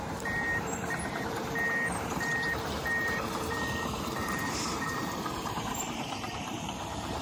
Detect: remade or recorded remade